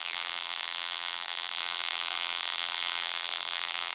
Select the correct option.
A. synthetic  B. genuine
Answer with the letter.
A